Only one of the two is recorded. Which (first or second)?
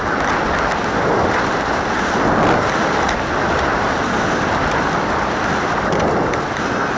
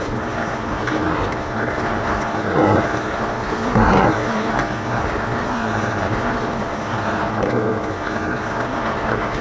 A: first